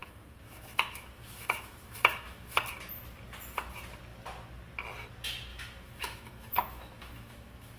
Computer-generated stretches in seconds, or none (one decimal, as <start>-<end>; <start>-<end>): 0.0-2.6; 5.5-7.8

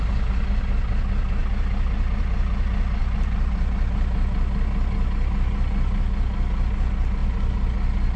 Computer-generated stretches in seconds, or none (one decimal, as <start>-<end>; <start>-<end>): none